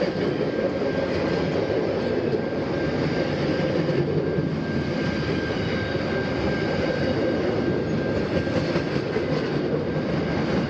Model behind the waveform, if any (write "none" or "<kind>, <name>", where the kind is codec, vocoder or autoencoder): none